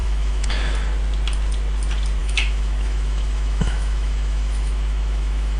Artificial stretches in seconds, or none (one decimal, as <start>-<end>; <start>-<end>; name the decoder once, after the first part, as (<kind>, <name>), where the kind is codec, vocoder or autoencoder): 0.0-0.5 (autoencoder, DAC-VAE); 2.2-5.6